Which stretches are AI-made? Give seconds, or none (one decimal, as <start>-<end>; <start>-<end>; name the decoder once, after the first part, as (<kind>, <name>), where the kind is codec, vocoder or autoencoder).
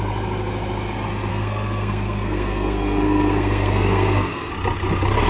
1.3-4.5 (codec, SNAC)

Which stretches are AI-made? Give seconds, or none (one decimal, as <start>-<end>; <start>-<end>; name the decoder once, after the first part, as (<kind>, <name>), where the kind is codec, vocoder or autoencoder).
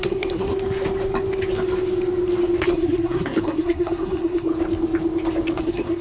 0.0-0.5 (codec, SNAC); 2.6-4.5; 5.6-6.0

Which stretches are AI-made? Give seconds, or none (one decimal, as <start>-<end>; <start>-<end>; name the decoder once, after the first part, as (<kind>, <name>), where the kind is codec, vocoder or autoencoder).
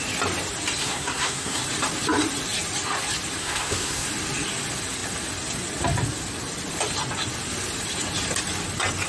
0.8-1.6 (codec, SNAC); 3.4-4.1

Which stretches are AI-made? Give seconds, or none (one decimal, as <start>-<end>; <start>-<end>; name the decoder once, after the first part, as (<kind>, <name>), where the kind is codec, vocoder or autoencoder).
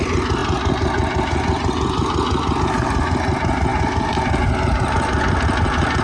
none